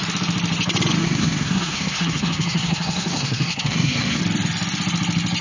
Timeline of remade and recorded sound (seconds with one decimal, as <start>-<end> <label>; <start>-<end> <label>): 0.0-1.0 recorded; 1.0-4.2 remade; 4.2-5.4 recorded

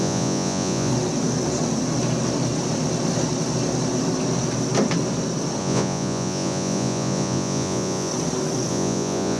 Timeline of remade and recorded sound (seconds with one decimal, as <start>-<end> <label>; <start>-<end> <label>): 0.0-0.9 remade; 0.9-5.6 recorded; 5.6-8.1 remade; 8.1-8.7 recorded; 8.7-9.4 remade

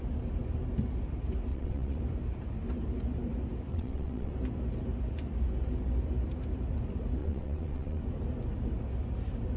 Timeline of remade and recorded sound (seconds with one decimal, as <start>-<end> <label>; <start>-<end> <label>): 0.0-1.5 recorded; 1.5-2.0 remade; 2.0-3.7 recorded; 3.7-4.3 remade; 4.3-7.2 recorded; 7.2-8.0 remade; 8.0-9.6 recorded

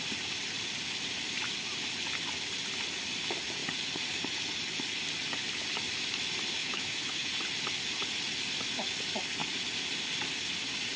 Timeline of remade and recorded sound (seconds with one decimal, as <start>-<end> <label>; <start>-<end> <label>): 0.0-6.6 recorded; 6.6-7.3 remade; 7.3-11.0 recorded